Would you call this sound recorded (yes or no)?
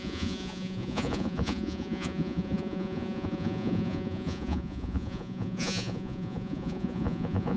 no